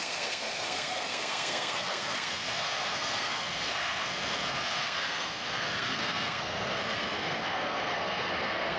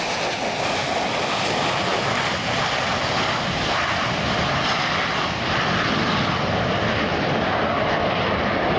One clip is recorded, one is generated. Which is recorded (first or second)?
second